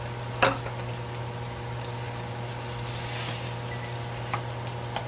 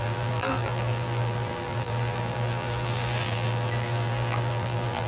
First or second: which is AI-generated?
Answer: second